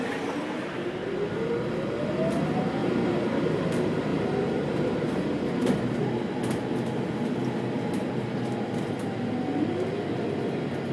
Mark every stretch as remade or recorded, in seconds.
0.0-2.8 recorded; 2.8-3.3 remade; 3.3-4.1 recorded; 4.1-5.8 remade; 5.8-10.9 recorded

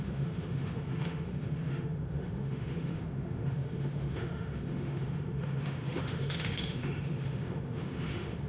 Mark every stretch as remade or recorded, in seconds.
0.0-8.5 remade

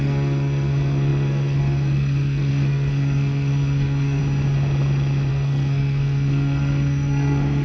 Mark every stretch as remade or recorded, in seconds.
0.0-4.2 remade; 4.2-5.3 recorded; 5.3-7.6 remade

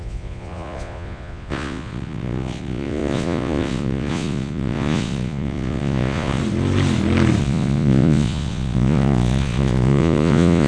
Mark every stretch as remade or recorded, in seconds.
0.0-6.4 remade; 6.4-7.4 recorded; 7.4-10.7 remade